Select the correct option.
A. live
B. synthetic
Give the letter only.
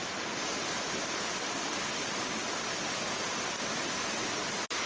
A